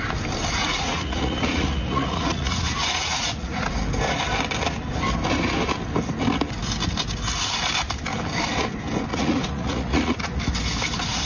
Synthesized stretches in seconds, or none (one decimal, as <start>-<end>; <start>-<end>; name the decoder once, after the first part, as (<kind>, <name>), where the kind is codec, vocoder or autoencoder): 0.6-3.7 (vocoder, Vocos); 9.1-10.4

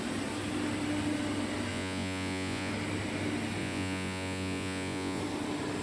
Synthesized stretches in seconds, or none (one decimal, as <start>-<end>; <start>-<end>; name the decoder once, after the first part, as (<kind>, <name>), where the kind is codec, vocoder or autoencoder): 1.7-2.7 (vocoder, Vocos); 3.6-5.2

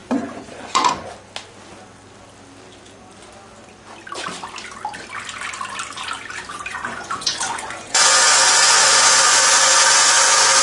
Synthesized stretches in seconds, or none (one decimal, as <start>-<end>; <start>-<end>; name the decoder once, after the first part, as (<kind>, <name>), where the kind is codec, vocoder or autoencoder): 0.0-1.1 (vocoder, Vocos); 6.7-10.6

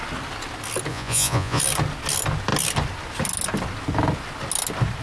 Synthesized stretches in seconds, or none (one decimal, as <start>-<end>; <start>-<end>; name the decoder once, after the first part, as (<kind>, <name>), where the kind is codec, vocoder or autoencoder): 0.9-1.6 (vocoder, Vocos)

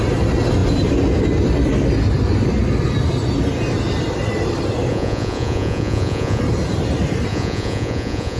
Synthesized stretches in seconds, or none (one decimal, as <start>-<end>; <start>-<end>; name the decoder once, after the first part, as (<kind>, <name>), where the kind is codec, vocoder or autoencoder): 4.9-6.4 (vocoder, Vocos); 7.3-8.4

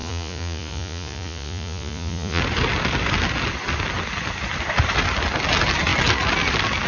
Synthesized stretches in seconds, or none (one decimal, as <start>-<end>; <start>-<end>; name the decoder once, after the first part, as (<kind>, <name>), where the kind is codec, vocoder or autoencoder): 0.0-2.4 (vocoder, Vocos)

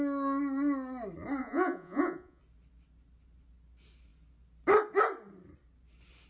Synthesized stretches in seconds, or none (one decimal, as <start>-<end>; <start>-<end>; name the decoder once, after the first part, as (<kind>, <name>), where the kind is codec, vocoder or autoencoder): 1.4-2.4 (vocoder, Vocos)